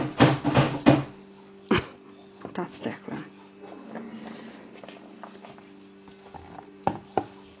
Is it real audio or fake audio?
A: real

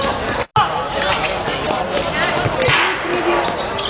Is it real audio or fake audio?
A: real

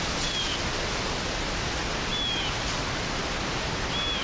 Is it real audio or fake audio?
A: real